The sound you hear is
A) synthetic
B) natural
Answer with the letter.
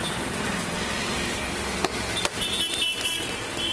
B